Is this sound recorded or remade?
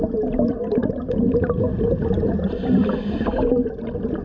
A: recorded